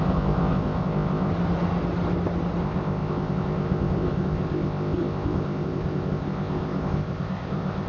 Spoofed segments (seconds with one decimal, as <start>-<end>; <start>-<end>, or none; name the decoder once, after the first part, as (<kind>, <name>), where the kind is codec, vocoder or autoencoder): 0.0-1.3 (codec, ZipCodec); 2.6-7.9